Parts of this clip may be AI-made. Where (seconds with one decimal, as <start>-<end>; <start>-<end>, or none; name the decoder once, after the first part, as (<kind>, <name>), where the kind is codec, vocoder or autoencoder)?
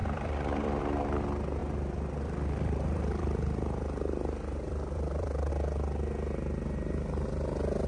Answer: 0.0-0.8 (vocoder, BigVGAN v2); 1.6-5.5